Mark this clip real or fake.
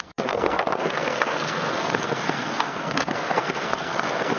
fake